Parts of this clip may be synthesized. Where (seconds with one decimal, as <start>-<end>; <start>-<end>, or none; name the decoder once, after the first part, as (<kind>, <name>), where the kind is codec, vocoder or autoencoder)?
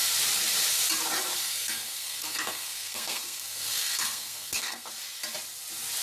1.4-4.9 (codec, SNAC)